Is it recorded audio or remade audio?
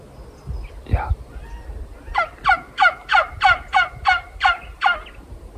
recorded